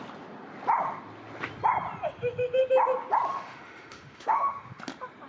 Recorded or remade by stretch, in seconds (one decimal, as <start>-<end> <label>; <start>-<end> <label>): 0.0-3.3 recorded; 3.3-4.8 remade; 4.8-5.3 recorded